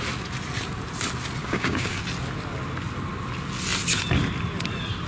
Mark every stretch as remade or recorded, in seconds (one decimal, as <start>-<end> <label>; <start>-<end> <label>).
0.0-1.4 recorded; 1.4-2.0 remade; 2.0-5.1 recorded